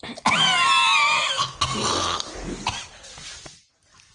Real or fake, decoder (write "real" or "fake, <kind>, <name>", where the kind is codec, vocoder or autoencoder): real